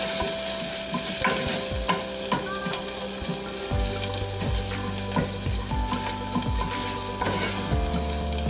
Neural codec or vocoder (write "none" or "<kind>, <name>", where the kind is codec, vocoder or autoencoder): none